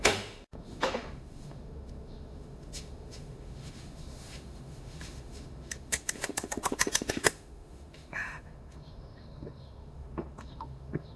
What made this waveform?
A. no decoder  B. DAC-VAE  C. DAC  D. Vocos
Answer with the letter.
B